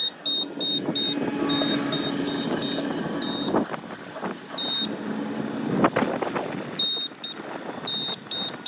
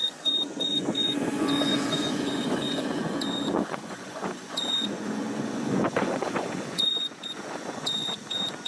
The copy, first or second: second